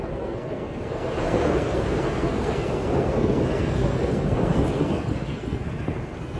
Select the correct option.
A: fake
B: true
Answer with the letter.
A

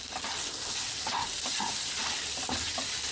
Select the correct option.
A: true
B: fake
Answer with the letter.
A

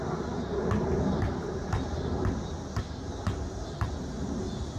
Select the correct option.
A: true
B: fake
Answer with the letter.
A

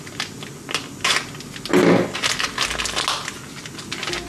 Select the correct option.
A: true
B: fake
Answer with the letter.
A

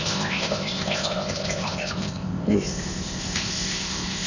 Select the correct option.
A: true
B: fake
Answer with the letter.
B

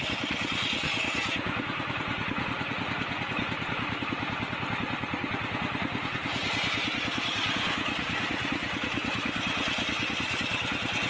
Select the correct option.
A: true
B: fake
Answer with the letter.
B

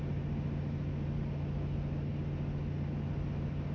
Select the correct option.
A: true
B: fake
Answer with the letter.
A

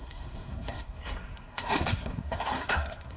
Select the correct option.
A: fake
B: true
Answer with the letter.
A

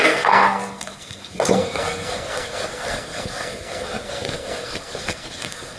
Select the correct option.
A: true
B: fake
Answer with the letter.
B